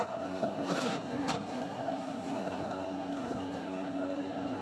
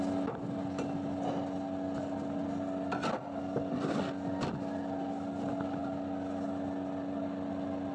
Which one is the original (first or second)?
second